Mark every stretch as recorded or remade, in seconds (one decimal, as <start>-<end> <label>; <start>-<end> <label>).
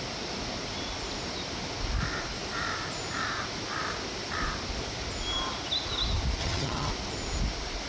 0.0-6.4 recorded; 6.4-6.9 remade; 6.9-7.9 recorded